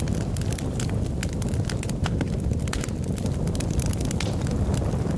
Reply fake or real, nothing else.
real